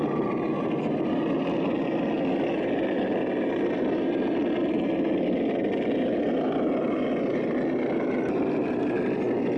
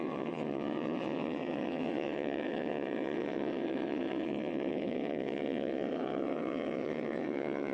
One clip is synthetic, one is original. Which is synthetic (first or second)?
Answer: second